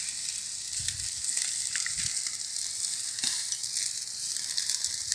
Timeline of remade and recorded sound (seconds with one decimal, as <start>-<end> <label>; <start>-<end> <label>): 0.0-5.1 recorded

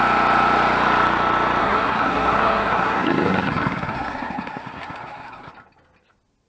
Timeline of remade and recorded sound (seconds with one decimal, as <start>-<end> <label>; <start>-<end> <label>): 0.0-1.6 recorded; 1.6-5.5 remade; 5.5-6.5 recorded

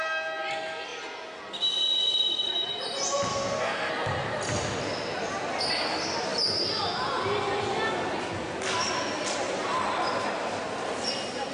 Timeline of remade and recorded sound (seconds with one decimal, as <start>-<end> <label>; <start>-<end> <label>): 0.0-3.3 recorded; 3.3-3.9 remade; 3.9-11.5 recorded

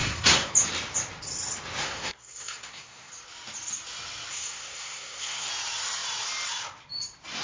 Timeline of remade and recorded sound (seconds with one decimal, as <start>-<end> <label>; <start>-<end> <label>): 0.0-0.5 remade; 0.5-1.8 recorded; 1.8-3.1 remade; 3.1-4.3 recorded; 4.3-5.5 remade; 5.5-7.4 recorded

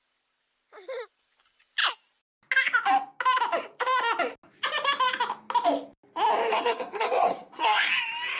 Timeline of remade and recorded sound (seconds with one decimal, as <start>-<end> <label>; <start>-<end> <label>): 0.0-6.5 recorded; 6.5-7.9 remade; 7.9-8.4 recorded

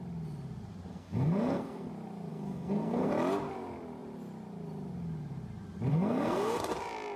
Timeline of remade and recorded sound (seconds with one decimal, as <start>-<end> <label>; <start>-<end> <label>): 0.0-0.9 recorded; 0.9-1.9 remade; 1.9-2.3 recorded; 2.3-3.1 remade; 3.1-5.9 recorded; 5.9-6.6 remade; 6.6-7.2 recorded